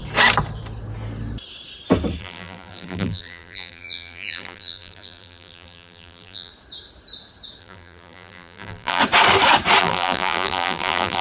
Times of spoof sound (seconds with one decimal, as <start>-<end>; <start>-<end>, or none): 2.2-6.5; 7.6-9.0; 9.8-11.2